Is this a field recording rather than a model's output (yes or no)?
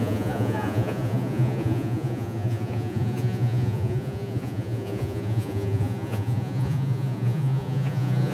no